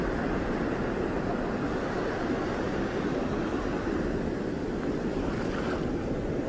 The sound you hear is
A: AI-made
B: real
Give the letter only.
B